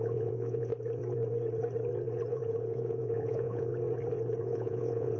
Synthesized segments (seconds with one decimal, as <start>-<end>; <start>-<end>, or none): 0.0-0.7; 2.3-3.7; 4.4-5.2